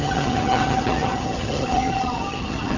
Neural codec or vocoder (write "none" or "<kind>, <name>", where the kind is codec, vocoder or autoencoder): vocoder, HiFi-GAN